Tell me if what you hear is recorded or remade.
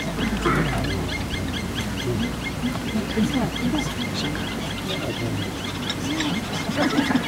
recorded